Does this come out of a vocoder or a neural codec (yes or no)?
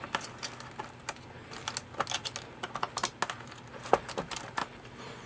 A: no